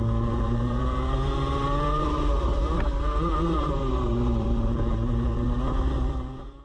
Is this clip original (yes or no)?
no